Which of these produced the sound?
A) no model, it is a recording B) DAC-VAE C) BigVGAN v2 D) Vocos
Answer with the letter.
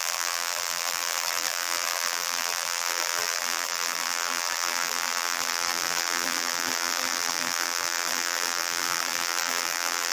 C